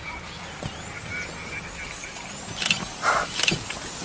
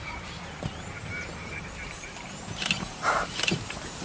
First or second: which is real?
first